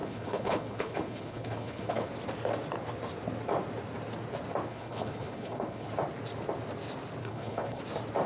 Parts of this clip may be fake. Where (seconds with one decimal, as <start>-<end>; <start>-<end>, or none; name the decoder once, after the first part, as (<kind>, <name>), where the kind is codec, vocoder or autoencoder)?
0.0-2.1 (codec, HILCodec); 4.7-5.9; 7.2-7.8